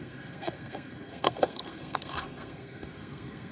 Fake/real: fake